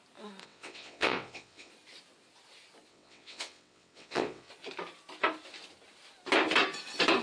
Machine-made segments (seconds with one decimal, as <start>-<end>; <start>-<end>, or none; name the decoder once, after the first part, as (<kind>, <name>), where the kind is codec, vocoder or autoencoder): 0.4-1.7 (vocoder, WaveNeXt); 2.9-4.5